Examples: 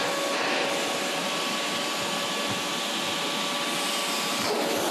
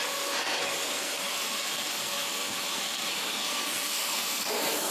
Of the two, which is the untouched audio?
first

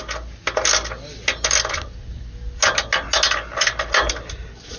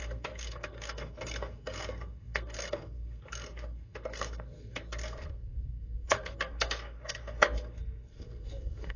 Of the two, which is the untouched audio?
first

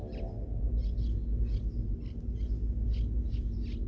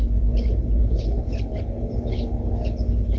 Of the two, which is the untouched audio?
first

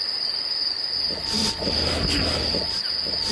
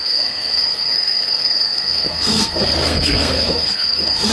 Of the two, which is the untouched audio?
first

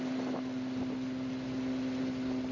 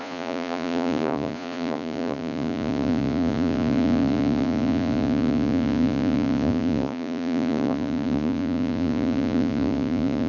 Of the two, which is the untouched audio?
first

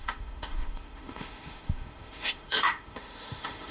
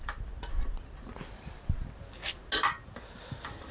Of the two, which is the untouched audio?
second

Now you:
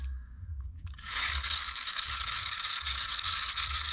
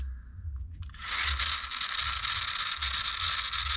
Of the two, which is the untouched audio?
second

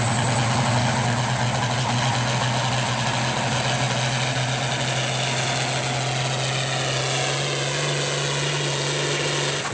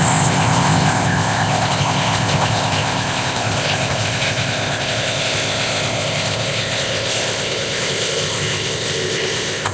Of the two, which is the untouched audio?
first